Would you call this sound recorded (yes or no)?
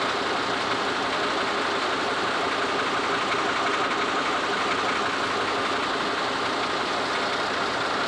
yes